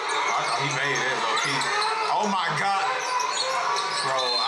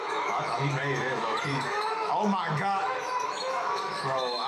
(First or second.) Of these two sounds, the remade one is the second